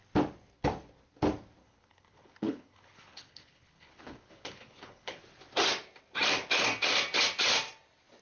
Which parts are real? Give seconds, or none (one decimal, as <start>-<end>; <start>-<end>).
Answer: 0.0-1.6; 5.2-8.2